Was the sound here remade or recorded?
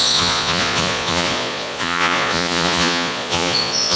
remade